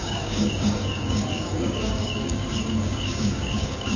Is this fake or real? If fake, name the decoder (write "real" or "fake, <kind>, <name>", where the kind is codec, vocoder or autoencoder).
fake, codec, DAC